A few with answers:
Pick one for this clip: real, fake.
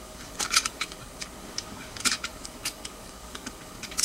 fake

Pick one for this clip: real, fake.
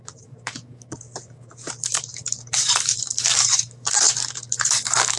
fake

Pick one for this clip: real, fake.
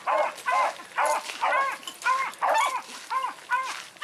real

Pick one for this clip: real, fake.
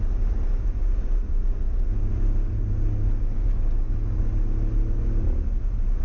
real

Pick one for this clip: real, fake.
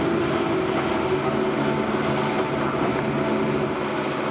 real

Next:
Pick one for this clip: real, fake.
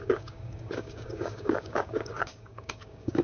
fake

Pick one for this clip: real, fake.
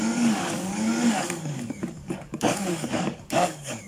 fake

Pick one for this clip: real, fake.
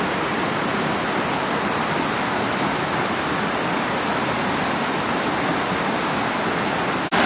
real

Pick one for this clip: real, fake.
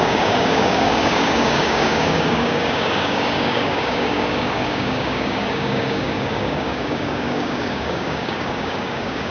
fake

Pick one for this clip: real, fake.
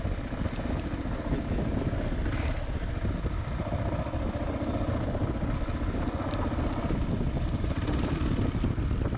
real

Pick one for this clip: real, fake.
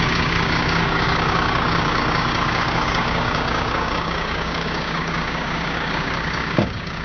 fake